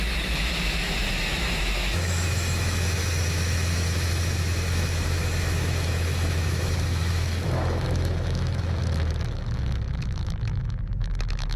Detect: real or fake fake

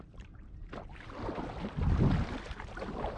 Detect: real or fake real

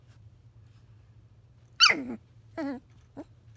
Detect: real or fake real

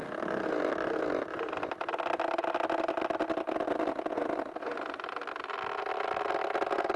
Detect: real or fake real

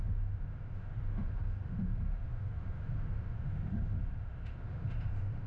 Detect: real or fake fake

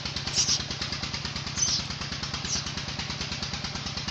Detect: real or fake real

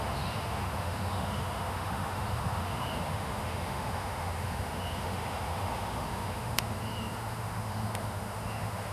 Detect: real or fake fake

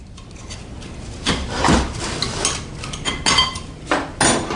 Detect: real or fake real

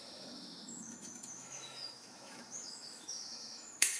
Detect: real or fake fake